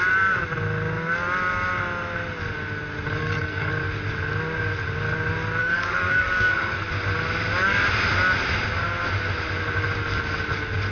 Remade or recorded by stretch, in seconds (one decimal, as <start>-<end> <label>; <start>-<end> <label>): 0.0-3.2 recorded; 3.2-3.7 remade; 3.7-5.6 recorded; 5.6-6.9 remade; 6.9-10.9 recorded